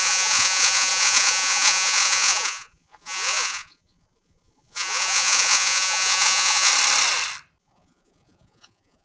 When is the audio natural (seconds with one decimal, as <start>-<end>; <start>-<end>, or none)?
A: 6.7-7.6